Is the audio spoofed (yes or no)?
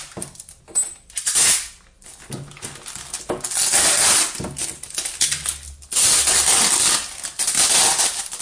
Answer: no